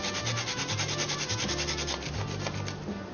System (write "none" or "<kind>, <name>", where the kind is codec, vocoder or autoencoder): none